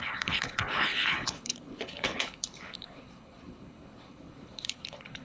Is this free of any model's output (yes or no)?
no